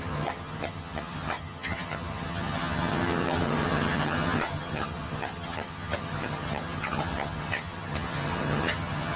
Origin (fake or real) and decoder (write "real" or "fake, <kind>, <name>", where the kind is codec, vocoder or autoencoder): fake, vocoder, HiFi-GAN